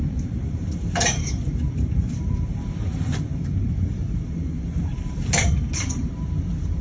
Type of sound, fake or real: fake